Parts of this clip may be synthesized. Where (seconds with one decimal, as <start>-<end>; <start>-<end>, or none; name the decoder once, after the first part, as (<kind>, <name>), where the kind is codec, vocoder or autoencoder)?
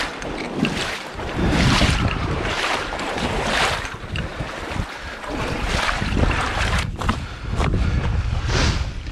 0.8-3.5 (vocoder, BigVGAN v2)